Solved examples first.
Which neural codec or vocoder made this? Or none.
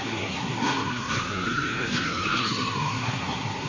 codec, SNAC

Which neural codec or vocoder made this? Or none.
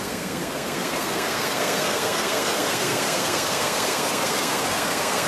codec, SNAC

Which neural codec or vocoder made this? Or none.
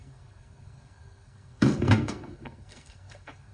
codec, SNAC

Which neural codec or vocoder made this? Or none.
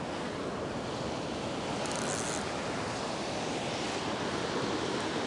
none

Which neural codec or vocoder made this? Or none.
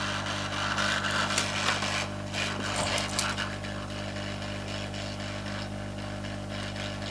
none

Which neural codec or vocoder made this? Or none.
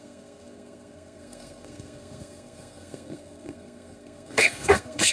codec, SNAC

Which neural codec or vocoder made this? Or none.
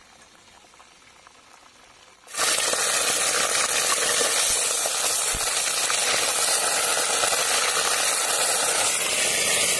none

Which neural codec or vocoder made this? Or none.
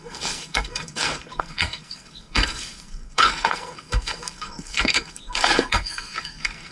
codec, SNAC